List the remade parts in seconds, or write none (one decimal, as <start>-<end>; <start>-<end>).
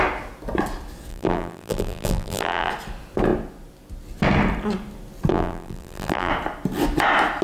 1.1-2.7; 5.3-6.3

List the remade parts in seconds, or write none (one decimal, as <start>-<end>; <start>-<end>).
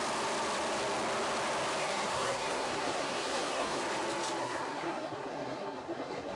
1.8-3.8; 4.4-6.4